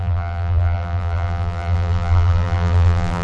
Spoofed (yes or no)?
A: yes